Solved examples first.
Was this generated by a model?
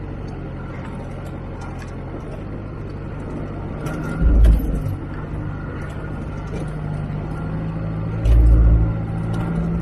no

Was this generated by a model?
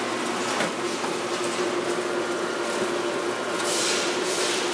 no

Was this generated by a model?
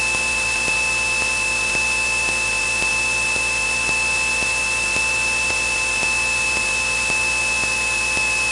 no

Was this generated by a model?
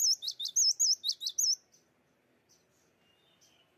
no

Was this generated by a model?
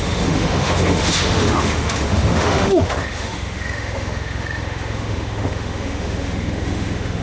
yes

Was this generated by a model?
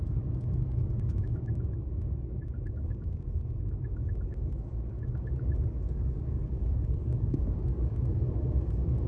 yes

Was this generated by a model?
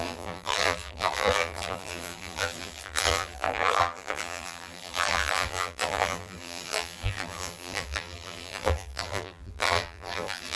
yes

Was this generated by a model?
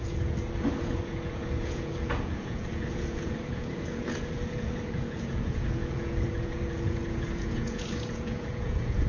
yes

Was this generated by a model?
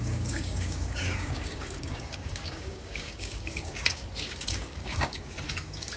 yes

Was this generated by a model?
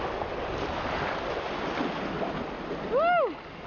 no